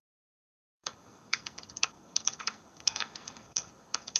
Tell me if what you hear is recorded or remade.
remade